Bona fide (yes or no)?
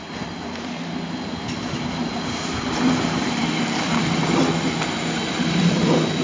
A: yes